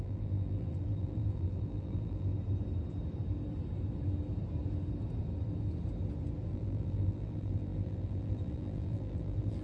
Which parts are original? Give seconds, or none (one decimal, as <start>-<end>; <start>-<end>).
2.3-6.5